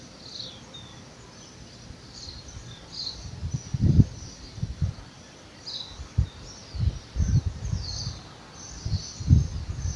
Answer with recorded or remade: recorded